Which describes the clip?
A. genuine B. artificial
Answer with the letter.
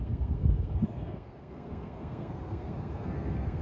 B